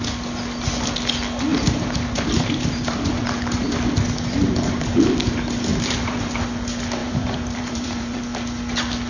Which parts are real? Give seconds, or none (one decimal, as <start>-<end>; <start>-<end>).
0.0-1.5; 3.2-5.7; 6.4-7.0; 8.2-9.1